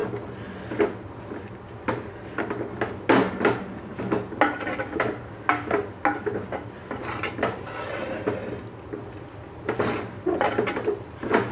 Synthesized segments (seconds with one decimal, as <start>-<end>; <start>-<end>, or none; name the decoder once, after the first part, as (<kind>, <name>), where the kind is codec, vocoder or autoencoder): none